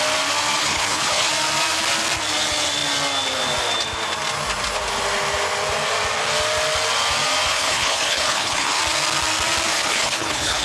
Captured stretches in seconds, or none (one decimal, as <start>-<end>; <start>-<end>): 0.0-0.6; 1.3-7.5; 8.8-9.7